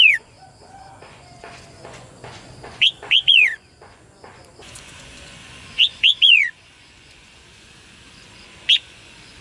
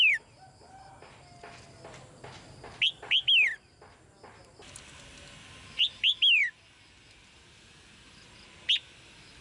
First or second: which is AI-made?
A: first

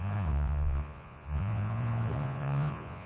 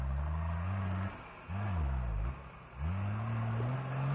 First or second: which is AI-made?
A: first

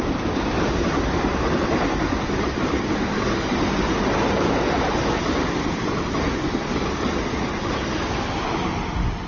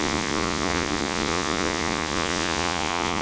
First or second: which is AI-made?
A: second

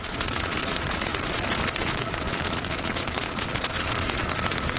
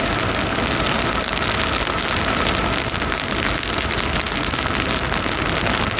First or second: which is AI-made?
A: first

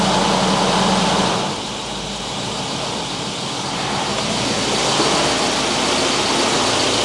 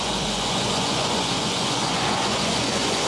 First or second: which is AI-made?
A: second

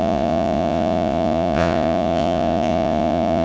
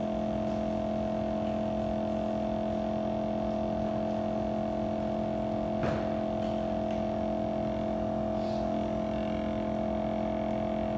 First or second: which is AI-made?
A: first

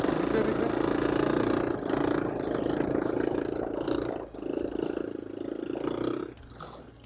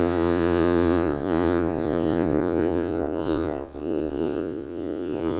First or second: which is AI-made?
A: second